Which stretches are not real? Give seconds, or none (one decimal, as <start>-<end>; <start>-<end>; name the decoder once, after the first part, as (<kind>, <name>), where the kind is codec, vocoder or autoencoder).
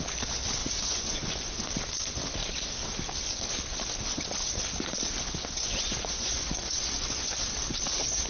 0.6-1.6 (vocoder, Vocos); 5.4-7.4